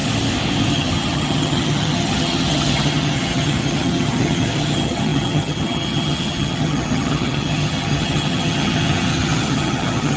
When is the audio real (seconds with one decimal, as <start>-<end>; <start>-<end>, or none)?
0.0-0.7